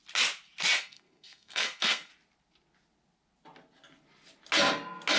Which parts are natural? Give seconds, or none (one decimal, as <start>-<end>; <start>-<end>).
0.0-0.8; 2.1-5.2